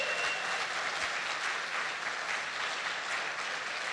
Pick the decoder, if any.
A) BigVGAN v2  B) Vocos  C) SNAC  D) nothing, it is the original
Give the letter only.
D